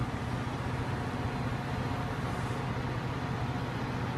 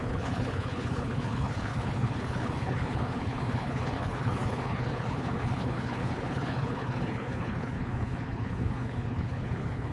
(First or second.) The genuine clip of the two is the first